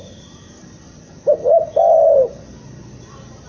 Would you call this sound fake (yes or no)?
no